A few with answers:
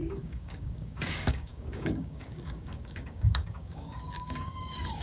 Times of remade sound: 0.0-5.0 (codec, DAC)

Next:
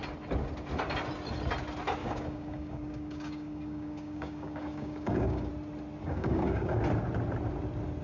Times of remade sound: 2.0-5.5 (codec, DAC); 6.0-6.8